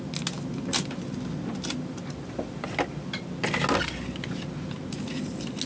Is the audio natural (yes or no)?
yes